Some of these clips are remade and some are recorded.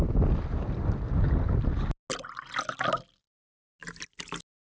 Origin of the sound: recorded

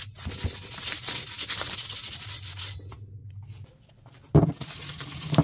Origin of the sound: recorded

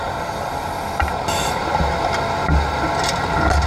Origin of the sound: recorded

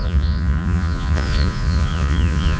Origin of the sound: remade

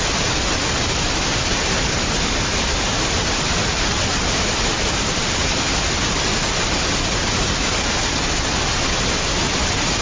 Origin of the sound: recorded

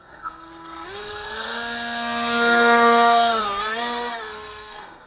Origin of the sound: remade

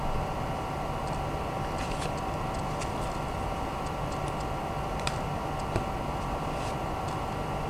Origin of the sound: remade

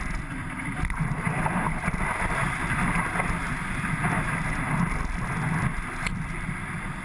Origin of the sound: remade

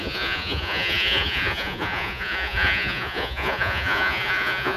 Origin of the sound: remade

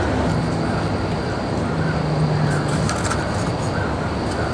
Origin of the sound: recorded